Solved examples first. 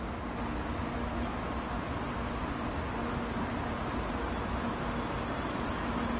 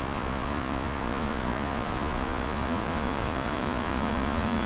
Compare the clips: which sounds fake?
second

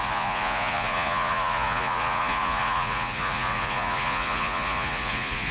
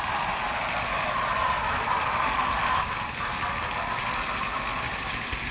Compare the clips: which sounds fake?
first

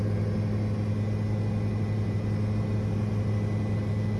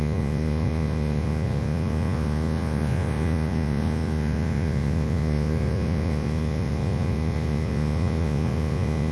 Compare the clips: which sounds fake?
second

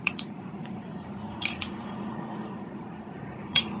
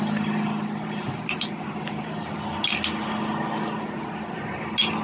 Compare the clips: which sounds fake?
first